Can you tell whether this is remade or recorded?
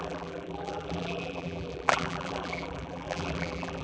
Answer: remade